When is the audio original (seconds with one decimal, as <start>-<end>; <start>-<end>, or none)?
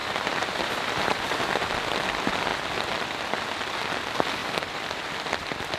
1.5-4.4; 5.1-5.8